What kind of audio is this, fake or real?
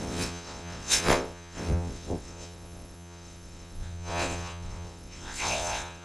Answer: fake